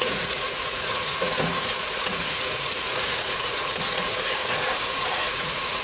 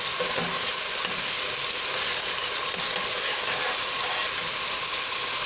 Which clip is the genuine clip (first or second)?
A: second